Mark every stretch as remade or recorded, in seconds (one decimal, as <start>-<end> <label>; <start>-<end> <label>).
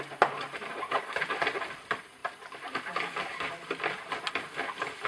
0.0-5.1 recorded